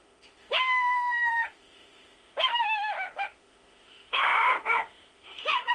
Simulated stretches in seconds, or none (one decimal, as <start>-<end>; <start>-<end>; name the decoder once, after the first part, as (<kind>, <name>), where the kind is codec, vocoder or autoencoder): 0.0-5.7 (autoencoder, DAC-VAE)